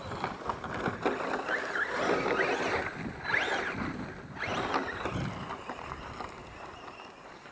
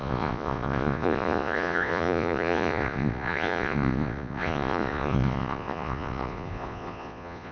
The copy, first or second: second